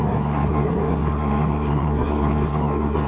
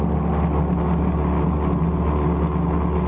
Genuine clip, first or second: second